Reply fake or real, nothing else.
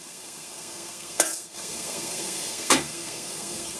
fake